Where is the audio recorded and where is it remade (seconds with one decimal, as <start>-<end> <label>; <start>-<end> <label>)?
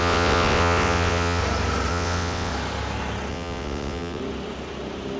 0.0-1.4 remade; 1.4-1.9 recorded; 1.9-2.5 remade; 2.5-3.3 recorded; 3.3-4.2 remade; 4.2-5.2 recorded